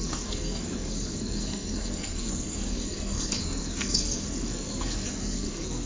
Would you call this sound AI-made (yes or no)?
yes